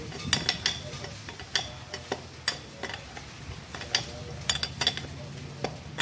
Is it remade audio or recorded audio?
recorded